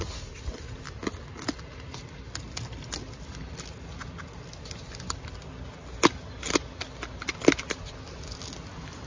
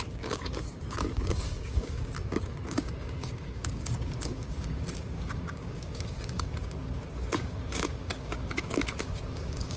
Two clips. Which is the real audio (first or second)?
first